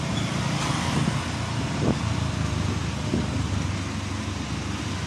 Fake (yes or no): no